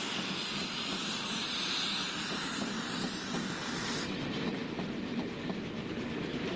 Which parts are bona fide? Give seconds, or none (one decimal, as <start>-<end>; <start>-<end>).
0.0-6.6